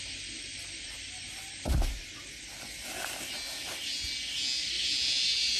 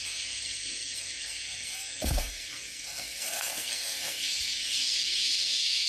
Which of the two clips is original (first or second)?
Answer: first